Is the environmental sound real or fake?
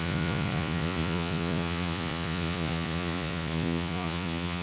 fake